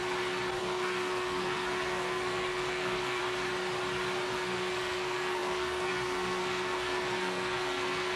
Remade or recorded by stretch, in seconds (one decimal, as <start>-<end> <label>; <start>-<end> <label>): 0.0-0.6 recorded; 0.6-3.2 remade; 3.2-4.3 recorded; 4.3-8.2 remade